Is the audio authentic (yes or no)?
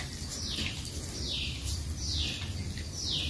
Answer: yes